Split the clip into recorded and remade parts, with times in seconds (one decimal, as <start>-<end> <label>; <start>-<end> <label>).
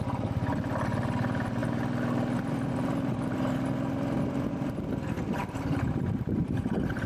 0.0-7.1 recorded